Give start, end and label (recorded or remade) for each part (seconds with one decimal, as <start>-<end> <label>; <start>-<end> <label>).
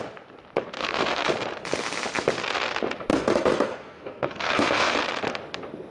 0.0-0.8 recorded; 0.8-1.3 remade; 1.3-3.1 recorded; 3.1-5.0 remade; 5.0-5.9 recorded